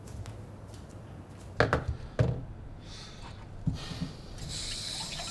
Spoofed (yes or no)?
no